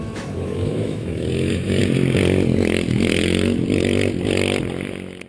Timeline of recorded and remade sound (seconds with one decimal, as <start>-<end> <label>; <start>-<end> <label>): 0.0-1.8 remade; 1.8-5.3 recorded